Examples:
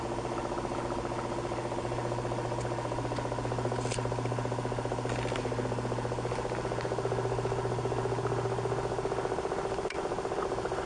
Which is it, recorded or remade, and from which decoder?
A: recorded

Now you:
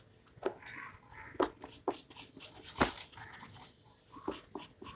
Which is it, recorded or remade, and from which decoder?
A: recorded